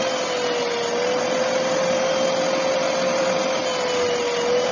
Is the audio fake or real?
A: real